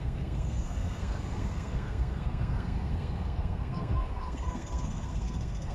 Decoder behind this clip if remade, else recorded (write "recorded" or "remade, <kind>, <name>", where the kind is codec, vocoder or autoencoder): remade, codec, SNAC